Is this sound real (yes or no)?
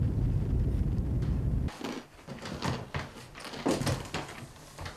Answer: yes